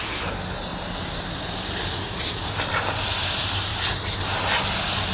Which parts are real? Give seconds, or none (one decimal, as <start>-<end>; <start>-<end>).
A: 0.0-5.1